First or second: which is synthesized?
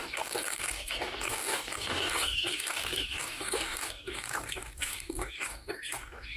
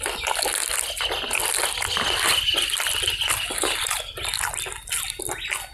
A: first